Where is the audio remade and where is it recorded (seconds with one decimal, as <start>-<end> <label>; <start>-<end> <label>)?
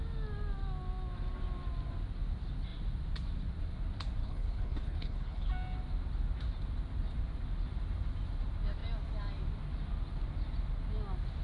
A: 0.0-4.2 recorded; 4.2-5.5 remade; 5.5-11.4 recorded